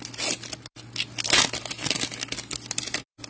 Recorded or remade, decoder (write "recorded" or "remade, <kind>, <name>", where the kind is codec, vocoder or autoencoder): recorded